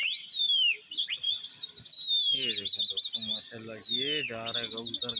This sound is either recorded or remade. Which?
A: recorded